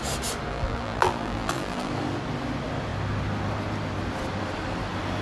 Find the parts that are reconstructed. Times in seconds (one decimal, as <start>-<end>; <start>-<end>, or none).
0.5-1.9